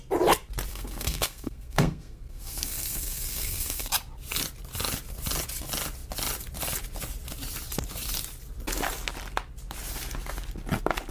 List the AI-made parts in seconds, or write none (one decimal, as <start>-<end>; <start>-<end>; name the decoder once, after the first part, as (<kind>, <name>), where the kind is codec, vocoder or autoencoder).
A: 0.7-3.9 (codec, SNAC)